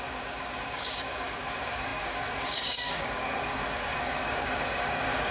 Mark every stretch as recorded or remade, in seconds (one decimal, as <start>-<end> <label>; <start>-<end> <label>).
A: 0.0-5.3 remade